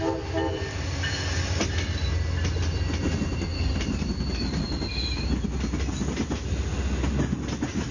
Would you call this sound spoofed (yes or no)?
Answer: no